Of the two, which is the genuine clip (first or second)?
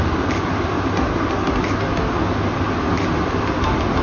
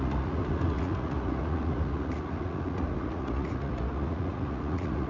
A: first